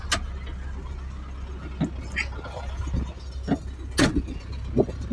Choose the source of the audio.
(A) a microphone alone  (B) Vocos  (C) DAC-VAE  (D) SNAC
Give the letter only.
A